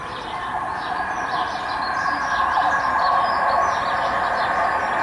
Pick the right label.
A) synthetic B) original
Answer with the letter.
B